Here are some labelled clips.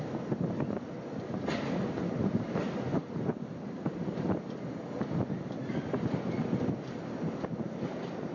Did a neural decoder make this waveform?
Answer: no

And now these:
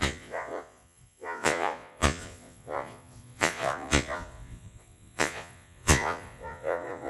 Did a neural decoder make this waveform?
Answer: yes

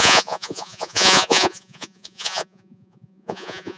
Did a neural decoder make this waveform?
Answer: yes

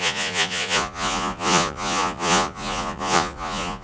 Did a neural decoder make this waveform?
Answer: yes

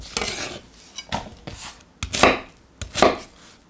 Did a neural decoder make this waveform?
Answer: no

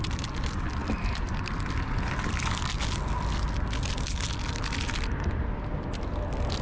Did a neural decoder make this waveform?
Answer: no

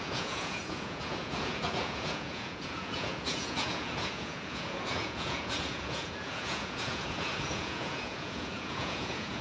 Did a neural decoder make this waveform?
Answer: yes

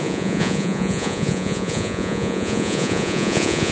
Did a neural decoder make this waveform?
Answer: yes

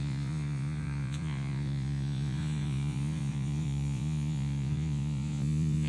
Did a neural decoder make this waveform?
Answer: yes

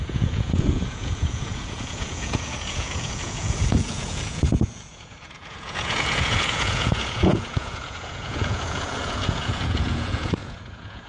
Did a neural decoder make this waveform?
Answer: yes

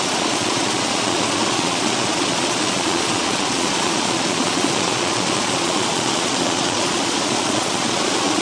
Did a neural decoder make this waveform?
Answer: yes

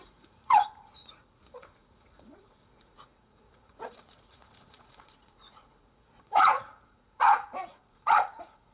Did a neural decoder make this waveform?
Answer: yes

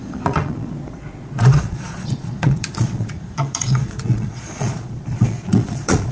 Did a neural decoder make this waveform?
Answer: yes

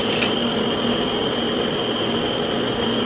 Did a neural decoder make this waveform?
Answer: no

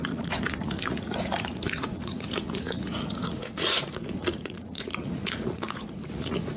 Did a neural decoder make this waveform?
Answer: yes